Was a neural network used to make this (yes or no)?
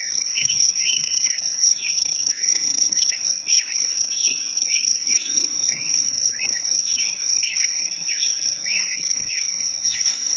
yes